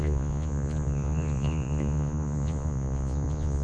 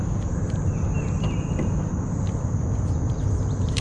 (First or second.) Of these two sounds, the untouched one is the second